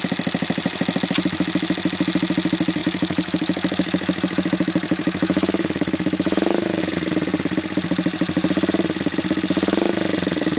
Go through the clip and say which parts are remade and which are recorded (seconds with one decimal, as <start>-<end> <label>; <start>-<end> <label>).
0.0-2.8 recorded; 2.8-6.8 remade; 6.8-10.6 recorded